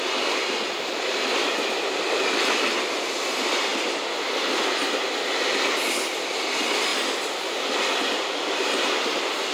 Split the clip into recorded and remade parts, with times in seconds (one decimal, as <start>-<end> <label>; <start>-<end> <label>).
0.0-9.5 recorded